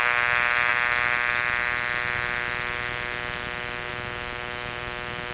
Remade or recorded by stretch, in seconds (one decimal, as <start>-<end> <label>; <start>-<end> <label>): 0.0-5.3 recorded

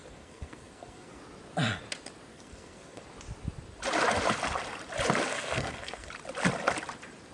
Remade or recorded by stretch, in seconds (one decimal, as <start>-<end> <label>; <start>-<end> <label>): 0.0-1.2 remade; 1.2-2.3 recorded; 2.3-3.0 remade; 3.0-5.3 recorded; 5.3-6.1 remade; 6.1-7.3 recorded

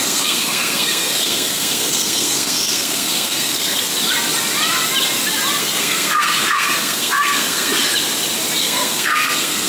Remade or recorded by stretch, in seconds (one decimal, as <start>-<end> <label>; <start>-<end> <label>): 0.0-3.9 remade; 3.9-5.6 recorded; 5.6-7.7 remade; 7.7-8.6 recorded; 8.6-9.7 remade

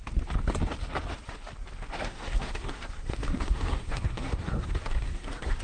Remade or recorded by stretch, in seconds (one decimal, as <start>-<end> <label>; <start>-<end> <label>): 0.0-1.9 recorded; 1.9-5.6 remade

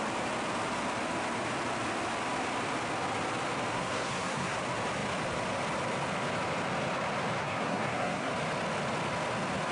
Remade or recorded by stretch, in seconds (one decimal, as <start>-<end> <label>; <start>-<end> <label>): 0.0-3.7 recorded; 3.7-4.6 remade; 4.6-7.4 recorded; 7.4-8.3 remade; 8.3-9.7 recorded

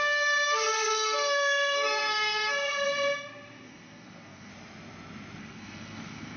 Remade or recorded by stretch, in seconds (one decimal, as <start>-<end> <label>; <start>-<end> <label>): 0.0-4.5 remade; 4.5-5.4 recorded; 5.4-6.4 remade

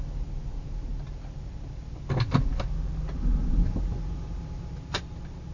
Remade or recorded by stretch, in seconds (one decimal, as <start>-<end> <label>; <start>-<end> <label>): 0.0-5.5 recorded

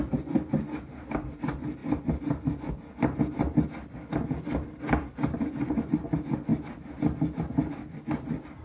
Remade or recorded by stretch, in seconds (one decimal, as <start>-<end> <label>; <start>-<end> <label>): 0.0-8.6 recorded